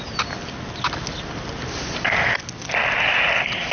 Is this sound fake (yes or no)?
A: no